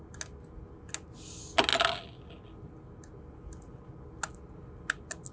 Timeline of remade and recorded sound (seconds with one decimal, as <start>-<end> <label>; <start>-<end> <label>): 0.0-5.3 recorded